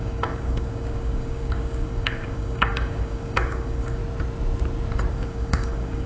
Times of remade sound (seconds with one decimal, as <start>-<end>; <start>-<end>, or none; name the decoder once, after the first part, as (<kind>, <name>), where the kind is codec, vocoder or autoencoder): 0.0-4.0 (codec, DAC); 5.1-6.1